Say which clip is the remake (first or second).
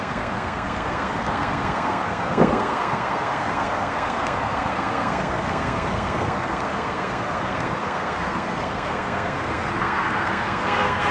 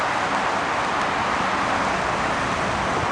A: first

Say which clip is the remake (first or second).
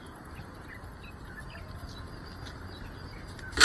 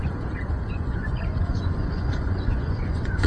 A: second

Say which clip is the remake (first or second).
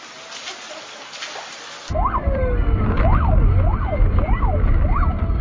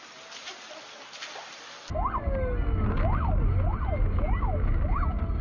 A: first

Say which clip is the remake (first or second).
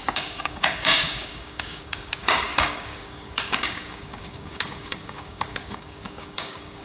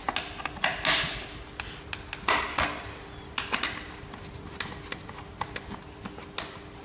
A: first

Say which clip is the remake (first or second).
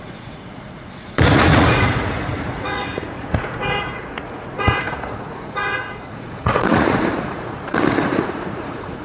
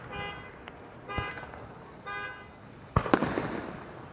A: first